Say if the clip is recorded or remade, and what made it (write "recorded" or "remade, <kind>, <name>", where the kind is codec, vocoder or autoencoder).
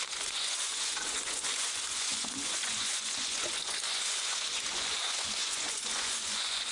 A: remade, vocoder, Vocos